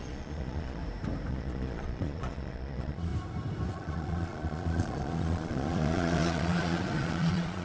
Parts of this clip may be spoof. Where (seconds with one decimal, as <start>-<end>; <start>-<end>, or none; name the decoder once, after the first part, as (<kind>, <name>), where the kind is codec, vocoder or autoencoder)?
0.0-0.8 (vocoder, Vocos); 1.3-3.1; 3.7-7.6